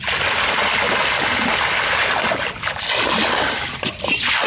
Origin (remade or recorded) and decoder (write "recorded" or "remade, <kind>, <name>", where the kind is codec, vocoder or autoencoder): recorded